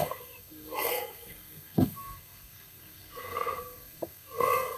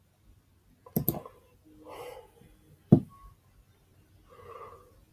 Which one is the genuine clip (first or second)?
second